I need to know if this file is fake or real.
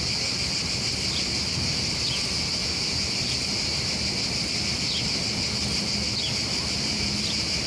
real